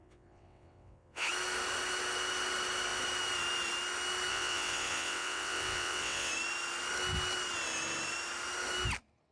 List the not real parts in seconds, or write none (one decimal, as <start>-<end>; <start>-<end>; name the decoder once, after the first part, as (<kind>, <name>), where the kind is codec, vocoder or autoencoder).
0.0-1.3 (vocoder, WaveNeXt); 4.3-6.3

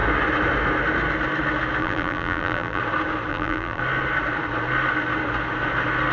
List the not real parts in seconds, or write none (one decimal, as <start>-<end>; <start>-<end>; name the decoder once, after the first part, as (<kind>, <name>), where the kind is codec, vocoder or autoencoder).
1.8-2.8 (vocoder, BigVGAN v2); 3.3-3.8

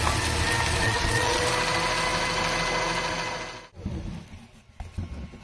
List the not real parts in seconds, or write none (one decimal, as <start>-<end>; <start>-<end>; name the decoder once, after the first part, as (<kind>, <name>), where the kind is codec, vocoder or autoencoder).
0.8-1.4 (vocoder, Vocos)

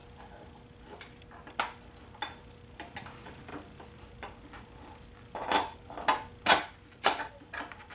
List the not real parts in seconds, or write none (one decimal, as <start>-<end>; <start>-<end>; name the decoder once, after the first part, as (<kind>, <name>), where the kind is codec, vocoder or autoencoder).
none

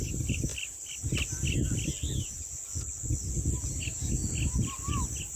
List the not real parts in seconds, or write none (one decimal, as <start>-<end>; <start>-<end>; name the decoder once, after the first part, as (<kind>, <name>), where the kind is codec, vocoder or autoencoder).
0.0-0.5 (vocoder, BigVGAN v2); 3.7-4.2; 4.9-5.4